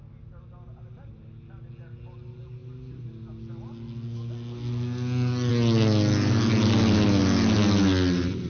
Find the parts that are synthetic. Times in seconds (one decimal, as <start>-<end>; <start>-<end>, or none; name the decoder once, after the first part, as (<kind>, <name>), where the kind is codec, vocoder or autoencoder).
none